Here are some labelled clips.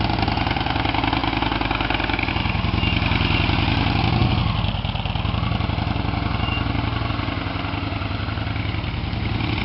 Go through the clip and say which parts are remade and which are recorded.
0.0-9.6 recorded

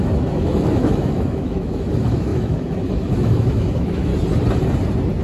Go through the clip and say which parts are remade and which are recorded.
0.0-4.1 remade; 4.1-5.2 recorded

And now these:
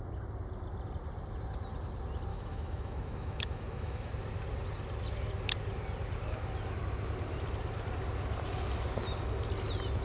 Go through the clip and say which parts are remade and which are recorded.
0.0-2.3 recorded; 2.3-4.1 remade; 4.1-10.0 recorded

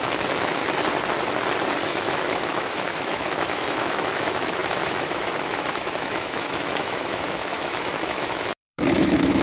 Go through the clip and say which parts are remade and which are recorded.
0.0-0.6 remade; 0.6-1.9 recorded; 1.9-9.4 remade

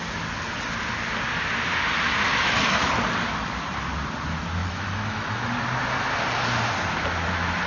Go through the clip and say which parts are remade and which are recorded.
0.0-2.3 recorded; 2.3-2.9 remade; 2.9-4.6 recorded; 4.6-5.5 remade; 5.5-7.7 recorded